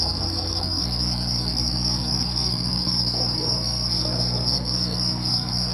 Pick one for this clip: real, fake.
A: fake